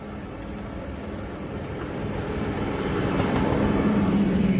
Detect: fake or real fake